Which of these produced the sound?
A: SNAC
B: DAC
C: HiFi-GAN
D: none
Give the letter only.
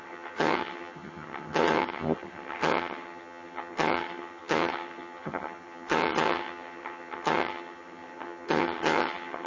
C